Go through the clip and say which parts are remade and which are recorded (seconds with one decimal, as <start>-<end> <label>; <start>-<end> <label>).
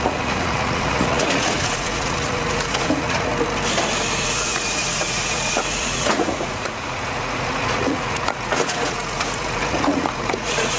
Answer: 0.0-3.3 remade; 3.3-4.2 recorded; 4.2-10.8 remade